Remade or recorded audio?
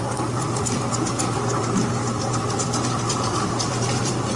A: remade